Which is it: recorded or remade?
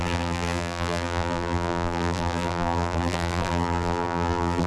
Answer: remade